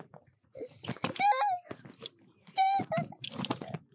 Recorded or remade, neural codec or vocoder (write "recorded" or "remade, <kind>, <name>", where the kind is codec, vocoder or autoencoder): remade, vocoder, BigVGAN v2